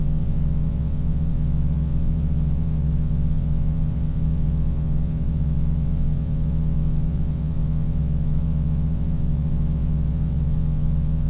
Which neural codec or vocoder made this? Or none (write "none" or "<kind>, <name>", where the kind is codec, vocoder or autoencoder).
vocoder, WaveNeXt